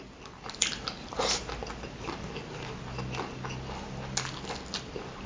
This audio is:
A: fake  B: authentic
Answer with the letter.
B